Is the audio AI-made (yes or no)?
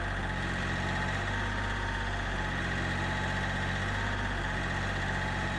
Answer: no